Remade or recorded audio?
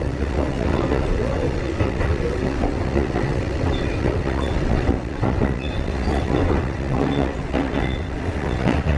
remade